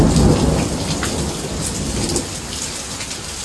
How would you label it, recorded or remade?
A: recorded